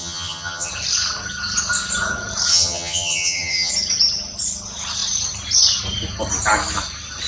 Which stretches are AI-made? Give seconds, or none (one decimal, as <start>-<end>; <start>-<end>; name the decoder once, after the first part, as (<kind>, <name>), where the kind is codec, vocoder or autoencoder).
0.0-0.7 (vocoder, HiFi-GAN); 2.5-3.7